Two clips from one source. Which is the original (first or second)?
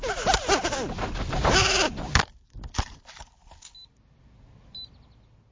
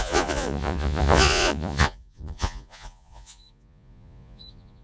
first